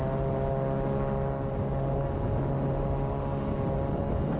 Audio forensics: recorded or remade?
recorded